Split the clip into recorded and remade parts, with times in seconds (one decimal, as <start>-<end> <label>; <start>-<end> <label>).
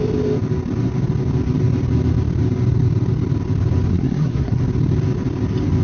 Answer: 0.0-3.9 recorded; 3.9-4.6 remade; 4.6-5.8 recorded